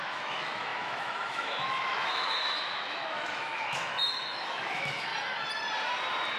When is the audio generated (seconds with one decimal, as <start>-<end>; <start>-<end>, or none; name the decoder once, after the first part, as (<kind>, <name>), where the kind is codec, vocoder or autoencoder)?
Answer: 0.0-5.1 (autoencoder, DAC-VAE)